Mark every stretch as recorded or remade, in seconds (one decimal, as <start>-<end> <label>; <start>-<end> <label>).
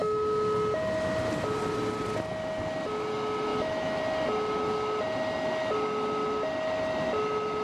0.0-3.5 recorded; 3.5-4.0 remade; 4.0-7.6 recorded